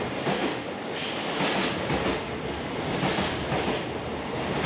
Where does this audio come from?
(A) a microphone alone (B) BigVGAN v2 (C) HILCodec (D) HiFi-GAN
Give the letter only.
A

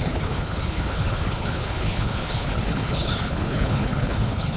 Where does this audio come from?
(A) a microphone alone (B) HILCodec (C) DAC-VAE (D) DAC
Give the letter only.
B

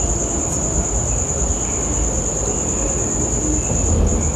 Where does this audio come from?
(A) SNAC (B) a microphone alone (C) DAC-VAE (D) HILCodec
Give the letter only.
B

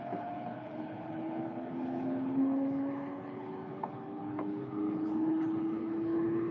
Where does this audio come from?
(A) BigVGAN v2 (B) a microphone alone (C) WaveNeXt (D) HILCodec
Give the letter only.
D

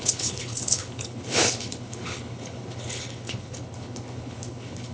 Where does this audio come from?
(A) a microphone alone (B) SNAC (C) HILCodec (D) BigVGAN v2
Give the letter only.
C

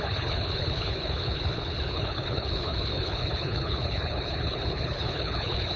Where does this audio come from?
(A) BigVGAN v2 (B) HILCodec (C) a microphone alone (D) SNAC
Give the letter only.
B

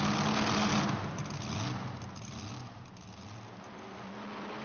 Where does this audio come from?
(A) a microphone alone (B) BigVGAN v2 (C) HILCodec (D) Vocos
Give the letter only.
A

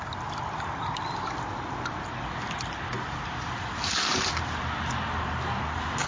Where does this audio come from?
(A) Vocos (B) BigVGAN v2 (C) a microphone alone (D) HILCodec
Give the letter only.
C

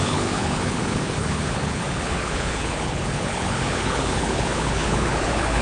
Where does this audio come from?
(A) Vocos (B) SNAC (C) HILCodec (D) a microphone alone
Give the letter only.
C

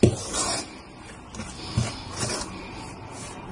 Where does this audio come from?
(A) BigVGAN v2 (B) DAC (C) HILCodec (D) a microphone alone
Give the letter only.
D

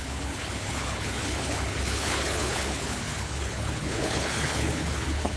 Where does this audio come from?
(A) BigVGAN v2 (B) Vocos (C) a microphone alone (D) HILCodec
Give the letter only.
D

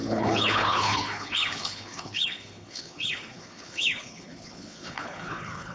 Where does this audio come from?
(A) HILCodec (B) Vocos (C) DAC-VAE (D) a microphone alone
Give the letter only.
A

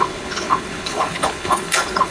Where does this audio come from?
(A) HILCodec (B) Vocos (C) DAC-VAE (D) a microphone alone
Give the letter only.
A